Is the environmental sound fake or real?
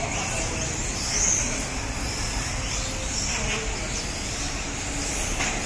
real